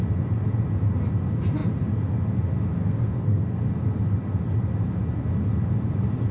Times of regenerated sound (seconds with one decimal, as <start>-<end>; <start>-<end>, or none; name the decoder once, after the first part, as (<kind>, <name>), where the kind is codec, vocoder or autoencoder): 2.8-3.6 (codec, SNAC)